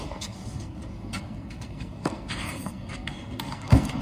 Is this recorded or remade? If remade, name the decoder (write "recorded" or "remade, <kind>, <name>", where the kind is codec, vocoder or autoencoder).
remade, codec, SNAC